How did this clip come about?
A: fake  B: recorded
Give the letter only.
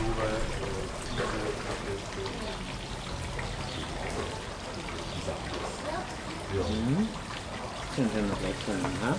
B